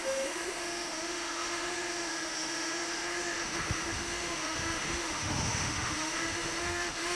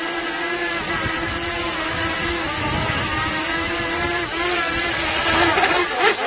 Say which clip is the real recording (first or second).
second